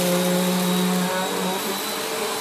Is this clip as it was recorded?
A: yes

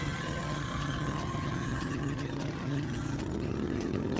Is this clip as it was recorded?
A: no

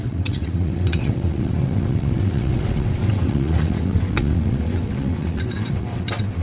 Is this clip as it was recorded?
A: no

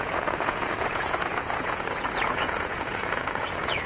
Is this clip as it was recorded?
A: no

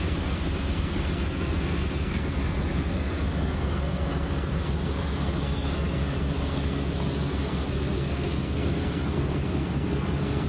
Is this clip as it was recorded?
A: no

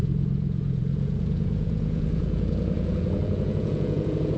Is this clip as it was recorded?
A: no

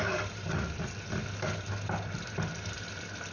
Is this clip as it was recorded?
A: no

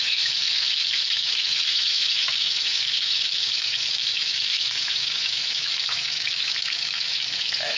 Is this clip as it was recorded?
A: no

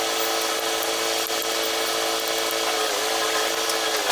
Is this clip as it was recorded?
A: yes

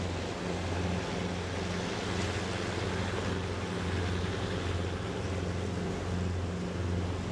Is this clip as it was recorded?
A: yes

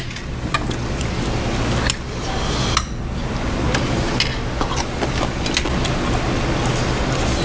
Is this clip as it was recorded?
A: yes